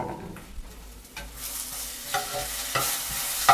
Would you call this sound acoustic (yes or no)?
yes